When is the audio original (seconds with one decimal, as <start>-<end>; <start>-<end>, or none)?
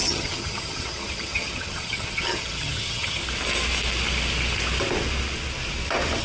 3.2-6.2